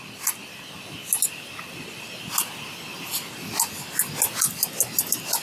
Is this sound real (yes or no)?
yes